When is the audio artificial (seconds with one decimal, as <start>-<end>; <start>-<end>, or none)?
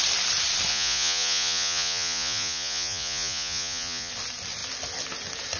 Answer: 0.7-4.1